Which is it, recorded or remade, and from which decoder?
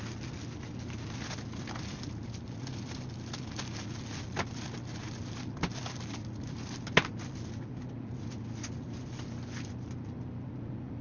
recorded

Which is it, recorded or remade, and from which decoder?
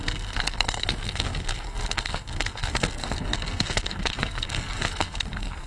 remade, codec, SNAC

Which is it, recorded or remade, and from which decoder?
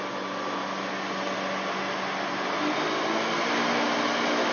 recorded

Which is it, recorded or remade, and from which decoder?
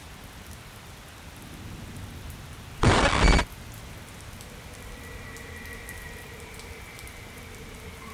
recorded